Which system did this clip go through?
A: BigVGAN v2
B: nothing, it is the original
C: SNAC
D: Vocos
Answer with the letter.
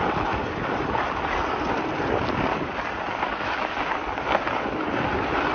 B